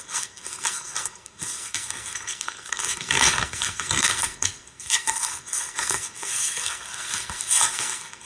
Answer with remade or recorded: remade